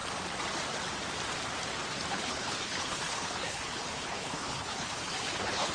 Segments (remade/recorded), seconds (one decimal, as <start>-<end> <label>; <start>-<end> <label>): 0.0-2.1 recorded; 2.1-5.7 remade